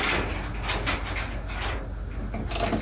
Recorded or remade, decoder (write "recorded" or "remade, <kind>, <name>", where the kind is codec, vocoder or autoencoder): recorded